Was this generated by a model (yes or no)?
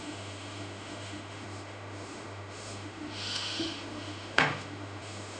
yes